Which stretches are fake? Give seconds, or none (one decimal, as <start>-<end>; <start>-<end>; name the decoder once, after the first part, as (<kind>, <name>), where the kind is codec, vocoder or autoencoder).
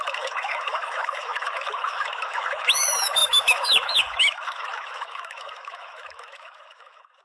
0.0-7.2 (autoencoder, DAC-VAE)